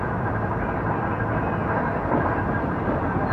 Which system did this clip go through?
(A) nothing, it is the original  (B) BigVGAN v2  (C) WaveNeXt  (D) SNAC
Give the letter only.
B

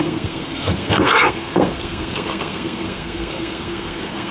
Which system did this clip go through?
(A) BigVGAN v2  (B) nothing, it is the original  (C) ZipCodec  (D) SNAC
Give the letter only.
D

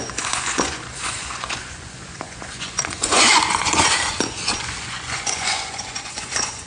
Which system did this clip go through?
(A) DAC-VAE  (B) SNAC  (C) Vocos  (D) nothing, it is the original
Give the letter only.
C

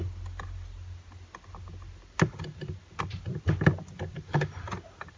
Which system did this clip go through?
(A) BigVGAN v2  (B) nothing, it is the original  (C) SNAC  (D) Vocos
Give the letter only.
B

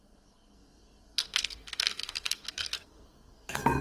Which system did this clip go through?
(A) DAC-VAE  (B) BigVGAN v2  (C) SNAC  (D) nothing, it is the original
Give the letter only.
C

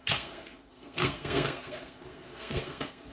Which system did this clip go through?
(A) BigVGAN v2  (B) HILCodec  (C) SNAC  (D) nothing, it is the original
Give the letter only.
C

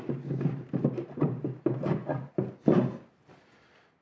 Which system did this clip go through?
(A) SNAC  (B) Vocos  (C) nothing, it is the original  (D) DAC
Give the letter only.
C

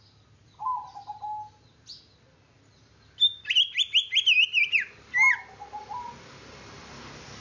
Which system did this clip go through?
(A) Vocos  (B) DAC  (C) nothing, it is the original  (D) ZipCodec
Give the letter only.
C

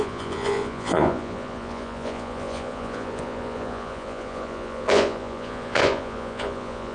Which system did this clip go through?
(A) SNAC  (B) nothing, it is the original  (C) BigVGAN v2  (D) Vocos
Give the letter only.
D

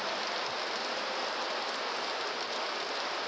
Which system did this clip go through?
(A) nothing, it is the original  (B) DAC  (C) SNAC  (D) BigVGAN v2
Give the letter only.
A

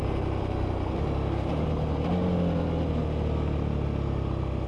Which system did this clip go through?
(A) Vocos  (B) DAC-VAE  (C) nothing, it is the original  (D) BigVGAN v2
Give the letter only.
C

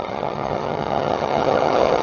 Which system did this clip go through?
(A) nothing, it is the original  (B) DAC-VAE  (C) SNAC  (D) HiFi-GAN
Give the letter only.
D